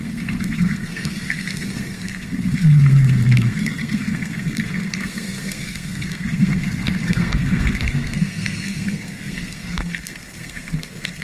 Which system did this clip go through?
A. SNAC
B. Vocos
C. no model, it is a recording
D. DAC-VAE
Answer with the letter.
A